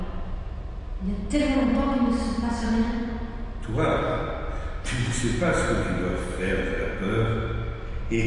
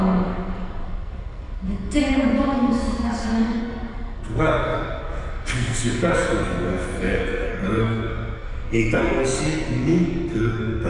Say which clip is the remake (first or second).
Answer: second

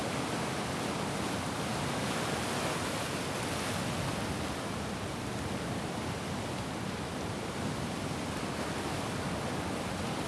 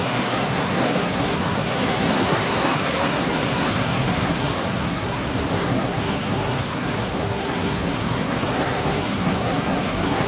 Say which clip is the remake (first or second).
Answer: second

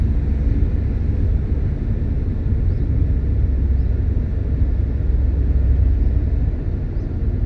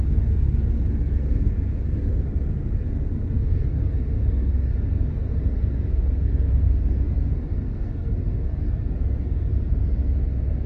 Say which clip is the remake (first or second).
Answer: second